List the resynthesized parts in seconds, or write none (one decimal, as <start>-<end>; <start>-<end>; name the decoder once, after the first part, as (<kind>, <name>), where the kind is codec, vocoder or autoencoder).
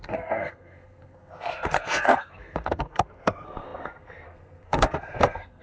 0.0-5.6 (codec, SNAC)